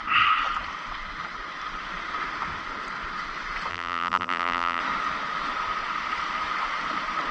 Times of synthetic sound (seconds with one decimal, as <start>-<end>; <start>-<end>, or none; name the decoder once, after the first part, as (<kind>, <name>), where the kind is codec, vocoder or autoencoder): 3.7-4.8 (vocoder, BigVGAN v2)